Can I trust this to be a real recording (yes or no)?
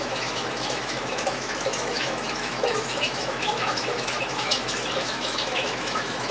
no